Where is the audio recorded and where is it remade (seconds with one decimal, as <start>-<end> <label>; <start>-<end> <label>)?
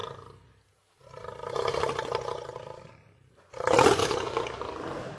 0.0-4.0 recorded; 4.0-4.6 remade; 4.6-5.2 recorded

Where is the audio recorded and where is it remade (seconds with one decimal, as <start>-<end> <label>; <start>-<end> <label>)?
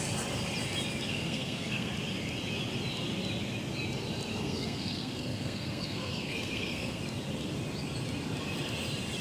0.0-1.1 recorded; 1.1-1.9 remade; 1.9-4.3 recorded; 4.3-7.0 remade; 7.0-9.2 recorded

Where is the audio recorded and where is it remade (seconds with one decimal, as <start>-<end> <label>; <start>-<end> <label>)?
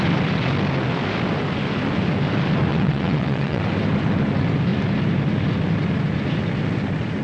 0.0-2.7 recorded; 2.7-3.6 remade; 3.6-7.2 recorded